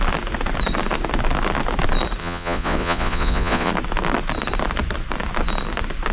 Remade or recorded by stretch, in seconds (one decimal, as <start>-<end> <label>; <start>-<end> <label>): 0.0-2.2 recorded; 2.2-3.7 remade; 3.7-6.1 recorded